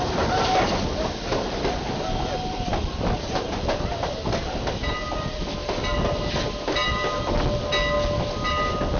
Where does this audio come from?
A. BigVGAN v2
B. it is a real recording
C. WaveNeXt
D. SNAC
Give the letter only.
B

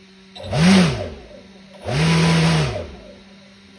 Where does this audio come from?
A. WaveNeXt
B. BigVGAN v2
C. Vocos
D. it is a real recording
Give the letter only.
D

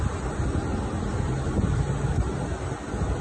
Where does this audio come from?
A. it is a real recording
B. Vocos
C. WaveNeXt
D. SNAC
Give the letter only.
A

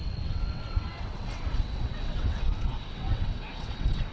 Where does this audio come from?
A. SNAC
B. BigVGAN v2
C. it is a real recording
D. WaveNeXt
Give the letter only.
D